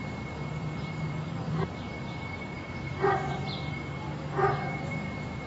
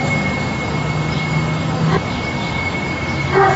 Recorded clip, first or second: second